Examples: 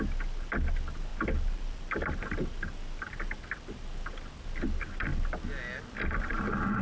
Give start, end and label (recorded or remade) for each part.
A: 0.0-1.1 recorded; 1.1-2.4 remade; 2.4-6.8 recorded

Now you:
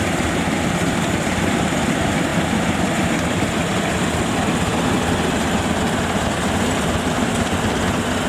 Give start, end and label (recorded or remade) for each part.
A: 0.0-8.3 recorded

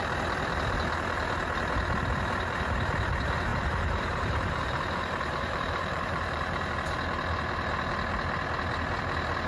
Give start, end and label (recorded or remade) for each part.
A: 0.0-3.5 recorded; 3.5-6.7 remade; 6.7-9.5 recorded